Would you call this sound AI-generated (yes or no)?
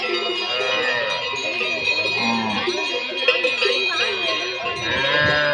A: no